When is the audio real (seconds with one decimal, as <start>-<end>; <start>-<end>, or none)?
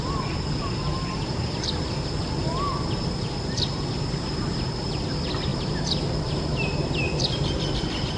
0.0-0.9; 5.1-5.5; 6.5-8.2